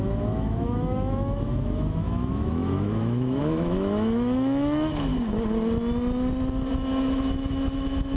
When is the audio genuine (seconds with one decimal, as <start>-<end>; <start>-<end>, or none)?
5.1-6.7